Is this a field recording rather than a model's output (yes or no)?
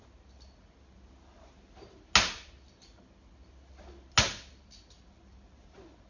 yes